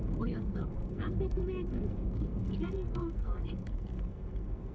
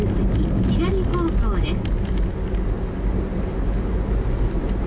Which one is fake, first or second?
first